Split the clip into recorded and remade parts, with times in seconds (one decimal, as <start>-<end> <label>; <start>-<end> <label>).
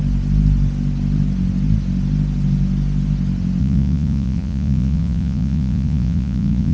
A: 0.0-3.6 recorded; 3.6-6.7 remade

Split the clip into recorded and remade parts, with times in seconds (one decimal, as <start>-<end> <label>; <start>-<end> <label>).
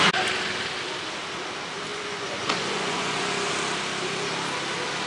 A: 0.0-1.9 recorded; 1.9-3.5 remade; 3.5-5.1 recorded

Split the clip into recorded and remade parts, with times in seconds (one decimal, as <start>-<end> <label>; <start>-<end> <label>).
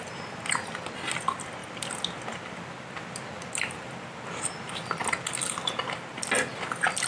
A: 0.0-7.1 recorded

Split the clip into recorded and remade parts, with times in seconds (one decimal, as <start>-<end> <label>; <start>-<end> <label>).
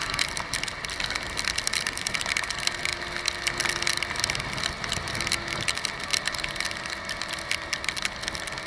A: 0.0-8.7 recorded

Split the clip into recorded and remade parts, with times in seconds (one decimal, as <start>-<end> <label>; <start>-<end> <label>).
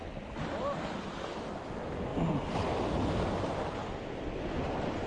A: 0.0-5.1 recorded